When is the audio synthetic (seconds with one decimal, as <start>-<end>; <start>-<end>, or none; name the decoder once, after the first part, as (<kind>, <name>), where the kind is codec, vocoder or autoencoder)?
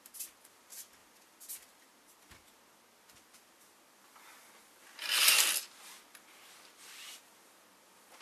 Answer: none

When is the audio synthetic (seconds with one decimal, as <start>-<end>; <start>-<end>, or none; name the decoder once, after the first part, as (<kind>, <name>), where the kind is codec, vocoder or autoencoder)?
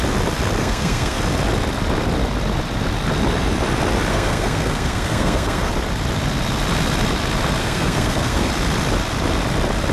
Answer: 0.6-1.2 (codec, SNAC); 4.1-5.7; 7.6-8.5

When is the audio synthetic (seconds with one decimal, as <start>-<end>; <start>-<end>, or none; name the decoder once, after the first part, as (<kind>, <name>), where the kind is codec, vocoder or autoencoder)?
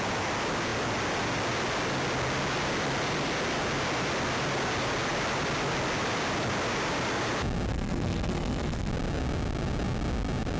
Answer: 7.7-8.9 (codec, SNAC)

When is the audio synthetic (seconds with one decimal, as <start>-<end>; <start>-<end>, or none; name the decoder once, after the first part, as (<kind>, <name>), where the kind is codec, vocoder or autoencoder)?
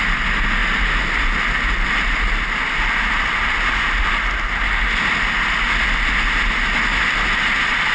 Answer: none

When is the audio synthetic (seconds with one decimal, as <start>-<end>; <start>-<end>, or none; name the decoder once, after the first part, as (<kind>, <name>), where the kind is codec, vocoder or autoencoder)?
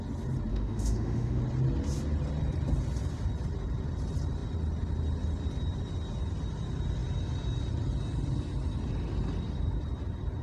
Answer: 0.5-1.4 (autoencoder, DAC-VAE)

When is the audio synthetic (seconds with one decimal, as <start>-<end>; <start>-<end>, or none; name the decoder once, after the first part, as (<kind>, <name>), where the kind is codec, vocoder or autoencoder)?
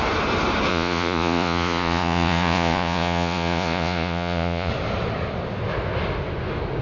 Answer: 0.7-4.7 (vocoder, Vocos)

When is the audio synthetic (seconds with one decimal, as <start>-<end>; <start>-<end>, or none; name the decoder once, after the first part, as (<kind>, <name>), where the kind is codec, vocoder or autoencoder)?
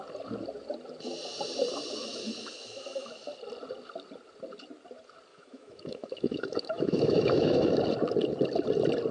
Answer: 2.0-3.1 (autoencoder, DAC-VAE); 5.3-7.7